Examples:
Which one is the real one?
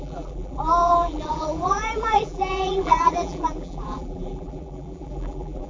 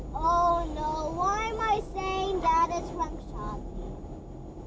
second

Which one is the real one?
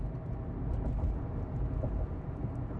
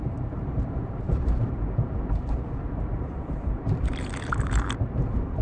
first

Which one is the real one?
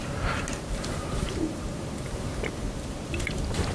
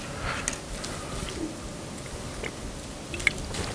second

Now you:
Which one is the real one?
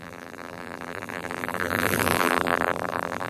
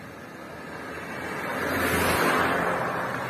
second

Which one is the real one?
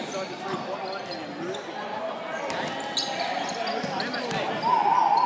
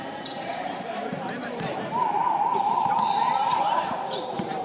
first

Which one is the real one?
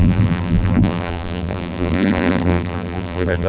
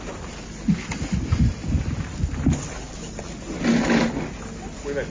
second